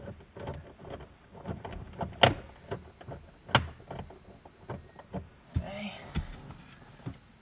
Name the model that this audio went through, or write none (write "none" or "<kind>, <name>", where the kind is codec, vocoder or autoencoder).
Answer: none